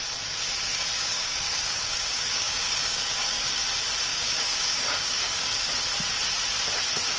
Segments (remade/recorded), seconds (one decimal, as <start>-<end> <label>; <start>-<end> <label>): 0.0-0.7 recorded; 0.7-3.6 remade; 3.6-4.1 recorded; 4.1-5.7 remade; 5.7-7.2 recorded